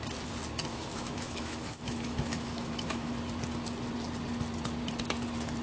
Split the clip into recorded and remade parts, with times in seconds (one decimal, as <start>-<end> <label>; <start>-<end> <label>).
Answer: 0.0-0.7 recorded; 0.7-3.1 remade; 3.1-5.6 recorded